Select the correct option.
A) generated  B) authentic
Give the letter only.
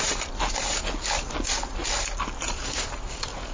B